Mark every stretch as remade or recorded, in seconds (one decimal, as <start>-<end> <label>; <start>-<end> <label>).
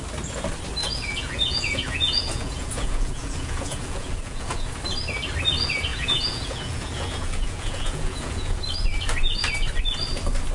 0.0-0.8 recorded; 0.8-4.7 remade; 4.7-5.9 recorded; 5.9-8.6 remade; 8.6-10.5 recorded